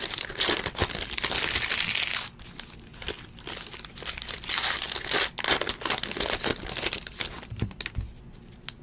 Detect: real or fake real